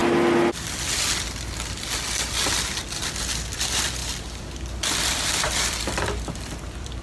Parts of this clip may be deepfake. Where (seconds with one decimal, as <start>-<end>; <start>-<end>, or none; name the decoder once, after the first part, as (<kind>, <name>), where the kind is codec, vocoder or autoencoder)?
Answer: 2.7-7.0 (vocoder, BigVGAN v2)